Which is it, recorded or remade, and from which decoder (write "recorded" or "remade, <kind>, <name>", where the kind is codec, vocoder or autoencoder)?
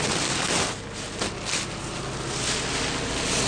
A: recorded